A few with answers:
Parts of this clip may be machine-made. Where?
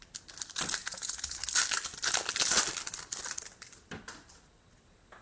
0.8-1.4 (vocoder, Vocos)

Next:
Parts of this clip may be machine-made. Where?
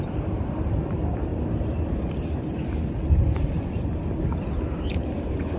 none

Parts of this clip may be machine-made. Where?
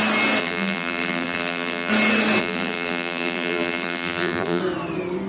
0.4-1.9 (vocoder, BigVGAN v2); 2.4-4.6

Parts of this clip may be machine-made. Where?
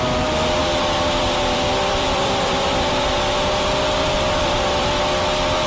0.6-3.1 (vocoder, BigVGAN v2); 4.0-5.0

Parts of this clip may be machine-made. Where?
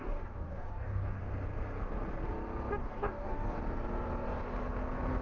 0.0-1.2 (codec, DAC); 2.8-3.6